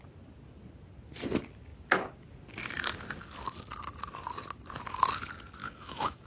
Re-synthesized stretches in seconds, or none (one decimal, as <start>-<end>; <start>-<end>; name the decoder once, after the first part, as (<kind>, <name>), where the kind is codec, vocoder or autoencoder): 5.6-6.3 (autoencoder, DAC-VAE)